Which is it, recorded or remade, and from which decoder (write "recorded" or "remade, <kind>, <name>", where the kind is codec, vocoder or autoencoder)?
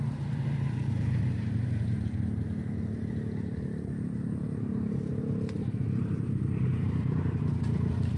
remade, vocoder, BigVGAN v2